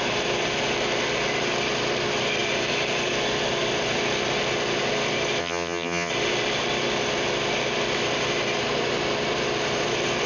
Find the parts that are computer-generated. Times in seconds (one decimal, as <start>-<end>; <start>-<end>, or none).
5.4-6.1